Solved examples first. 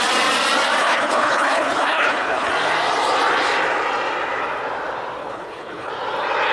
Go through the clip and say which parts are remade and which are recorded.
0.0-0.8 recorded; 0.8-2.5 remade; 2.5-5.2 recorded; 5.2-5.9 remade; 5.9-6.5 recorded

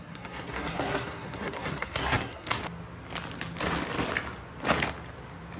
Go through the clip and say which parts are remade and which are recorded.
0.0-2.6 remade; 2.6-5.6 recorded

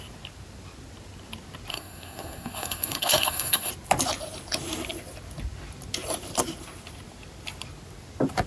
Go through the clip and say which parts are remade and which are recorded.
0.0-1.7 recorded; 1.7-3.7 remade; 3.7-8.5 recorded

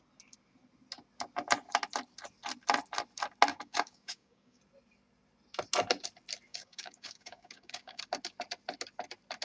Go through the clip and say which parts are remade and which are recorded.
0.0-3.5 recorded; 3.5-4.6 remade; 4.6-6.5 recorded; 6.5-8.0 remade; 8.0-9.4 recorded

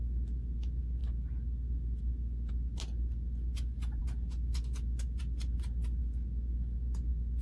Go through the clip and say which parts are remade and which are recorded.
0.0-7.4 recorded

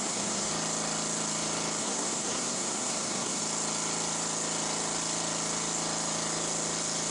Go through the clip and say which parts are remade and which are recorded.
0.0-0.5 remade; 0.5-1.8 recorded; 1.8-3.4 remade; 3.4-7.1 recorded